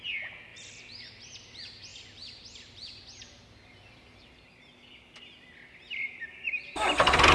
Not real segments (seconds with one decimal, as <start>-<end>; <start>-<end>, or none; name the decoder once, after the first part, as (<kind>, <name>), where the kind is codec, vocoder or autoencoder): none